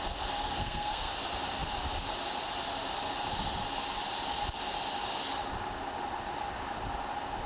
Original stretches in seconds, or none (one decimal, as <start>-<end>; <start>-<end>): 0.0-0.6; 1.1-7.5